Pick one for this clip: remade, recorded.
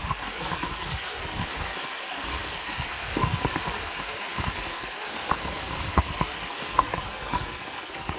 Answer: remade